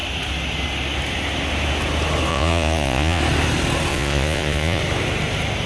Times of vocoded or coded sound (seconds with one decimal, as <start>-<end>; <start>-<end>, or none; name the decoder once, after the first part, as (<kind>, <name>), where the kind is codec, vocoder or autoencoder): 2.3-3.2 (vocoder, Vocos); 3.9-4.8